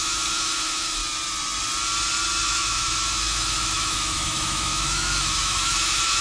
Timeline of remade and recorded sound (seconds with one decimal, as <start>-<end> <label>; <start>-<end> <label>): 0.0-1.0 remade; 1.0-2.4 recorded; 2.4-6.2 remade